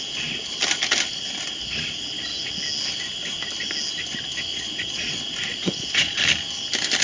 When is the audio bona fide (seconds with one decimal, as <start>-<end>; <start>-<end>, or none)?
0.0-4.5; 5.1-5.5; 6.2-7.0